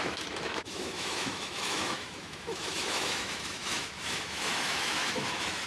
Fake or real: fake